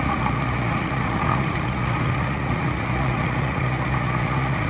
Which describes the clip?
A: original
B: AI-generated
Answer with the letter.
B